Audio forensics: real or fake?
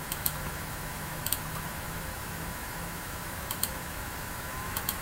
fake